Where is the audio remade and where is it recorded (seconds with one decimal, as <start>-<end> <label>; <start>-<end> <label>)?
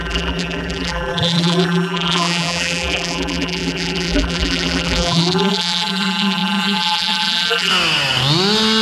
0.0-7.7 remade; 7.7-8.8 recorded